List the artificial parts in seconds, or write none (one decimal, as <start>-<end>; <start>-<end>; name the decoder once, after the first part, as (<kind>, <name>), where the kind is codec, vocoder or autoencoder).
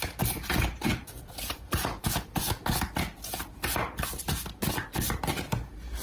0.9-2.5 (vocoder, Vocos)